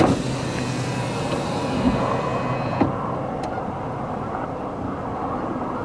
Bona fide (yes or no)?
yes